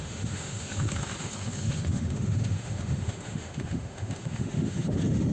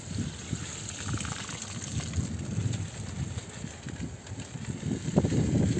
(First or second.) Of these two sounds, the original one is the second